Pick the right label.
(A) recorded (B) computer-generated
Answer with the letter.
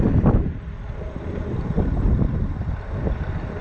A